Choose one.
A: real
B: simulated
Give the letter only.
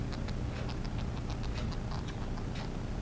A